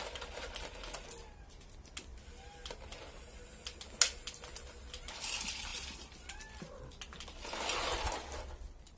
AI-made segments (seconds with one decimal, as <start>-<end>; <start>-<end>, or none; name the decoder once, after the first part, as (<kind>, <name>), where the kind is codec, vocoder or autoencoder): none